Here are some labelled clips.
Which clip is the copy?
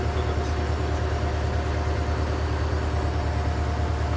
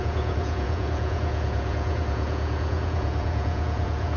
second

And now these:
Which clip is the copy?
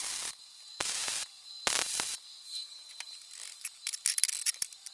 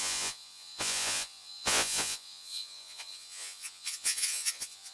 second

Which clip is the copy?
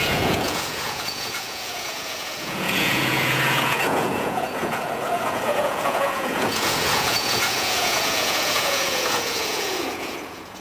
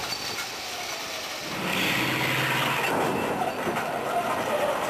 first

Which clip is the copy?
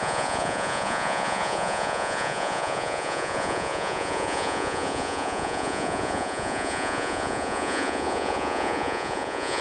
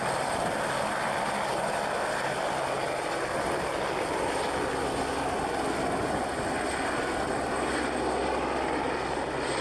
first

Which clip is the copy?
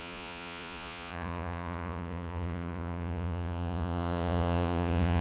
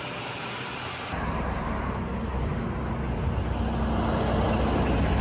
first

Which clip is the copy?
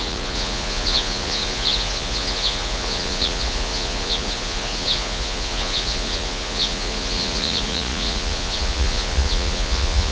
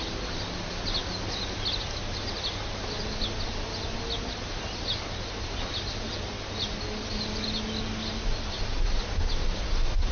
first